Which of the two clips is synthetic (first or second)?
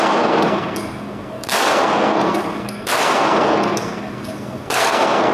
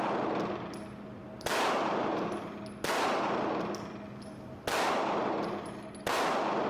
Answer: first